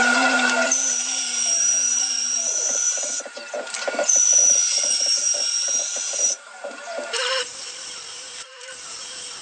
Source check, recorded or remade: remade